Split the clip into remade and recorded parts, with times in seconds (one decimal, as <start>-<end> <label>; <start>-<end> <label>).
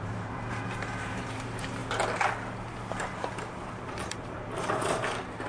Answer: 0.0-1.8 remade; 1.8-2.5 recorded; 2.5-5.5 remade